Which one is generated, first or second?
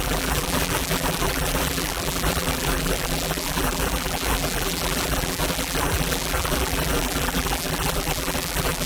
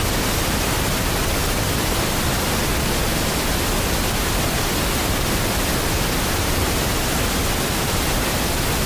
first